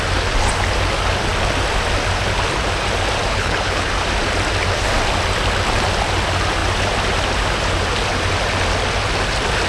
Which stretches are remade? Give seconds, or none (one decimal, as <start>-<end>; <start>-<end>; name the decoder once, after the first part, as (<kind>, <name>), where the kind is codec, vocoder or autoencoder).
3.3-3.9 (codec, HILCodec)